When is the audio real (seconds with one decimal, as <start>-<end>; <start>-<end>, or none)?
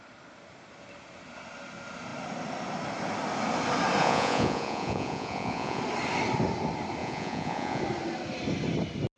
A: 0.0-4.0; 5.8-7.0; 7.8-9.2